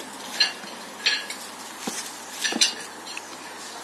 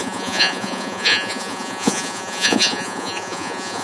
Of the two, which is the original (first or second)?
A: first